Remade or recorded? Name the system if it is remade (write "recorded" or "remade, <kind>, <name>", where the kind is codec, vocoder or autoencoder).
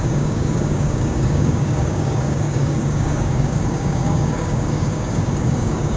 remade, codec, DAC